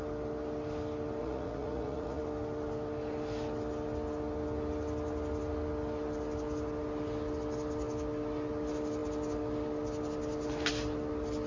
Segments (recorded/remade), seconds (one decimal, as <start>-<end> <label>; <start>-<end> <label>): 0.0-1.2 recorded; 1.2-2.2 remade; 2.2-11.5 recorded